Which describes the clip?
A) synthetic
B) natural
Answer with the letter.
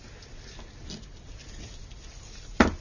B